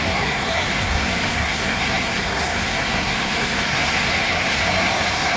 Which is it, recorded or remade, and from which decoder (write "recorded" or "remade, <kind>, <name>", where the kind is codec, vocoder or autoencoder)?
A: remade, codec, SNAC